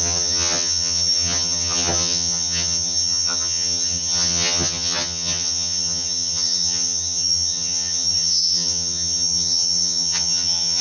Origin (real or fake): fake